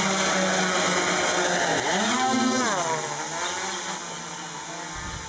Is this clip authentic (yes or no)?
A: yes